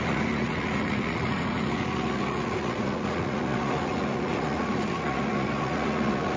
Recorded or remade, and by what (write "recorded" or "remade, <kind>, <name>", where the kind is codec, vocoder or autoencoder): remade, vocoder, Vocos